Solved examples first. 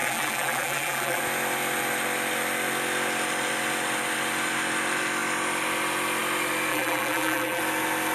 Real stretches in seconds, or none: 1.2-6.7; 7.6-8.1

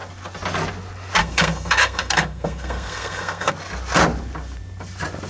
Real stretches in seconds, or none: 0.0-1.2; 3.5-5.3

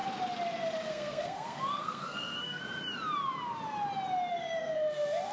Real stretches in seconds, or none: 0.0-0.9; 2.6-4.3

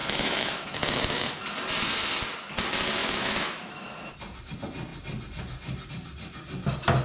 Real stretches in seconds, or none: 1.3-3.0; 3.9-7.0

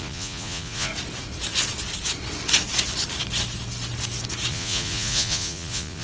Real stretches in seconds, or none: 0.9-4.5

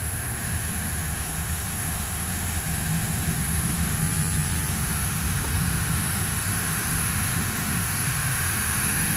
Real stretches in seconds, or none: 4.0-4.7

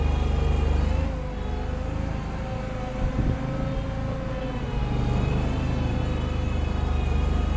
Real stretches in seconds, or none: 0.0-7.6

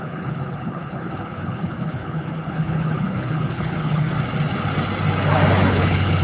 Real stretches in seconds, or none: 4.1-5.7